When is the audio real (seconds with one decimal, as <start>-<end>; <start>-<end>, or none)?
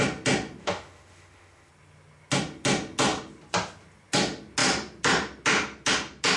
0.0-0.6; 1.7-6.4